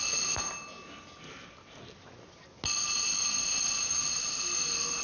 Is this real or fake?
real